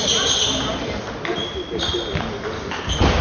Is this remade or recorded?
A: recorded